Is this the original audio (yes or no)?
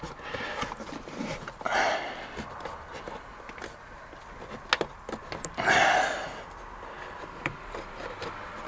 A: yes